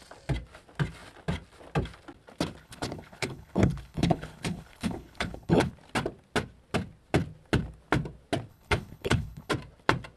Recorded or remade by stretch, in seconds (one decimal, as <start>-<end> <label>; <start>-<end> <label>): 0.0-2.6 recorded; 2.6-5.7 remade; 5.7-8.5 recorded; 8.5-9.5 remade; 9.5-10.2 recorded